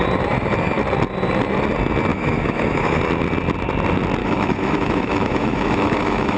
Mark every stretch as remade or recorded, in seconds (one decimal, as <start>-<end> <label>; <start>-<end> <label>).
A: 0.0-2.1 recorded; 2.1-3.0 remade; 3.0-4.2 recorded; 4.2-6.4 remade